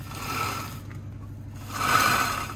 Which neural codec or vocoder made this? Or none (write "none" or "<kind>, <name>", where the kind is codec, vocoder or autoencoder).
none